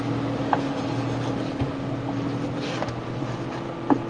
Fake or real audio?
real